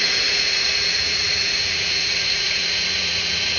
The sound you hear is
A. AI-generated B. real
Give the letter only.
A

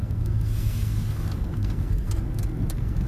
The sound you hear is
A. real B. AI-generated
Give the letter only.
B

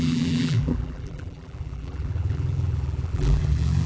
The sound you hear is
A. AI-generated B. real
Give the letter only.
A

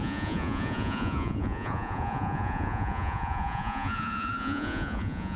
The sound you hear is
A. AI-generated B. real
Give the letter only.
A